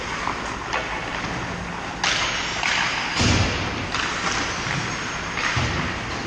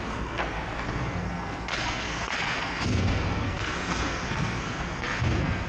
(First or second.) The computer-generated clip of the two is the second